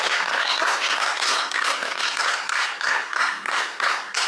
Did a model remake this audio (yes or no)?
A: yes